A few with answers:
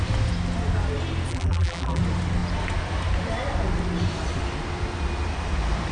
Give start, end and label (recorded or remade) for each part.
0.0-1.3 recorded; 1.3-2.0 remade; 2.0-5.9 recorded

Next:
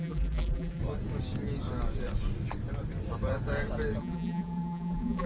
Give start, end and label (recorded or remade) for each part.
0.0-0.8 remade; 0.8-4.0 recorded; 4.0-5.3 remade

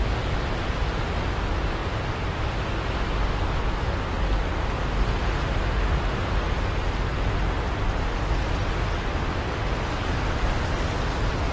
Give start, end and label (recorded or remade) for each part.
0.0-11.5 recorded

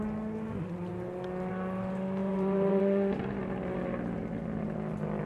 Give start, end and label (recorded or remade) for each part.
0.0-2.2 recorded; 2.2-2.8 remade; 2.8-5.3 recorded

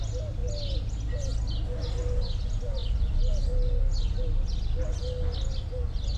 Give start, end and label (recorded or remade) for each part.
0.0-6.2 recorded

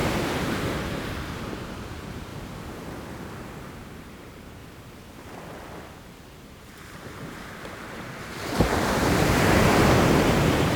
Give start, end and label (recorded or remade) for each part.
0.0-2.3 remade; 2.3-3.7 recorded; 3.7-4.6 remade; 4.6-6.5 recorded; 6.5-10.8 remade